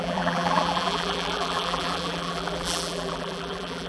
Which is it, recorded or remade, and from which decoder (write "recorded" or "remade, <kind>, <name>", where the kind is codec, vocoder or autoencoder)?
remade, vocoder, BigVGAN v2